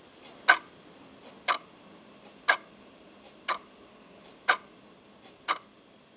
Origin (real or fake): real